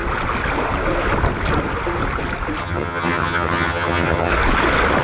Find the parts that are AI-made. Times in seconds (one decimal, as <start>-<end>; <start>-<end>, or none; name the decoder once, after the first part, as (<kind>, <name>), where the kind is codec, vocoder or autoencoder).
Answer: 2.6-4.3 (vocoder, HiFi-GAN)